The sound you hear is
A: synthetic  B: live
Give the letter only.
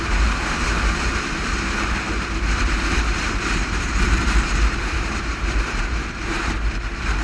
A